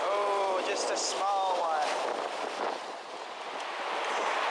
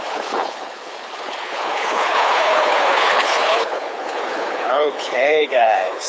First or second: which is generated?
second